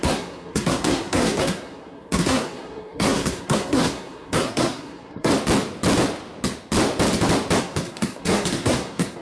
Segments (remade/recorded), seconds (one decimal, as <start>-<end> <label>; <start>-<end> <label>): 0.0-5.3 remade; 5.3-7.6 recorded; 7.6-9.2 remade